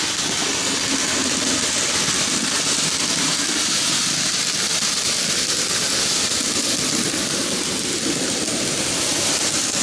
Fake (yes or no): no